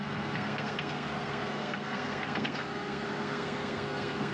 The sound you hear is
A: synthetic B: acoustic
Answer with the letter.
A